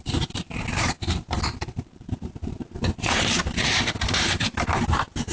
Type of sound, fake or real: fake